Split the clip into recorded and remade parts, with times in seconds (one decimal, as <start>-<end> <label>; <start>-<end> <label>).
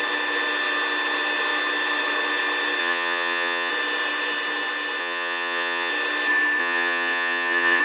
0.0-2.8 recorded; 2.8-3.7 remade; 3.7-5.0 recorded; 5.0-5.9 remade; 5.9-6.6 recorded; 6.6-7.8 remade